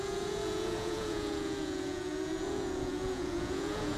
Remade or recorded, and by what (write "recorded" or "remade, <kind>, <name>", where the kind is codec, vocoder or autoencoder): remade, vocoder, Vocos